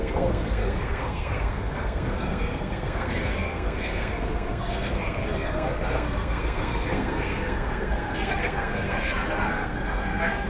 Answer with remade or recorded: remade